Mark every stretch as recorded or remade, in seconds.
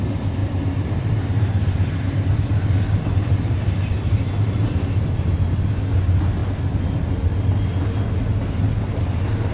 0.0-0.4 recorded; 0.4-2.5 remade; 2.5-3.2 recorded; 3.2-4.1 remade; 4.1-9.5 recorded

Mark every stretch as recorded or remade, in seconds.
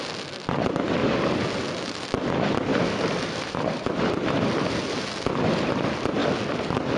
0.0-2.7 recorded; 2.7-5.0 remade; 5.0-7.0 recorded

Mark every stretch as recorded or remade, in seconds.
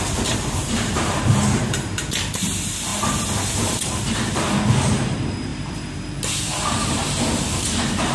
0.0-2.9 remade; 2.9-4.0 recorded; 4.0-8.1 remade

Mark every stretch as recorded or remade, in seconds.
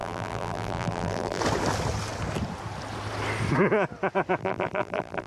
0.0-1.4 remade; 1.4-4.4 recorded; 4.4-5.3 remade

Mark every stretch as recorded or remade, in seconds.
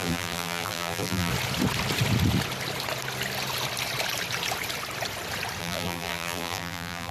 0.0-1.3 remade; 1.3-5.6 recorded; 5.6-7.1 remade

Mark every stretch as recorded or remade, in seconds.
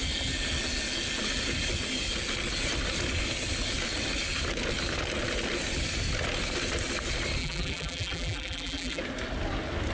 0.0-7.4 recorded; 7.4-9.0 remade; 9.0-9.9 recorded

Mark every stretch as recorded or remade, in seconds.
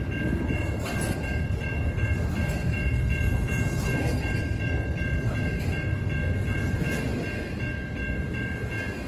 0.0-9.1 recorded